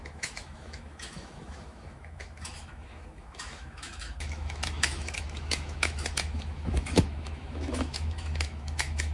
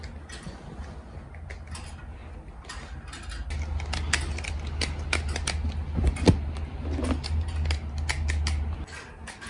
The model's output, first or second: first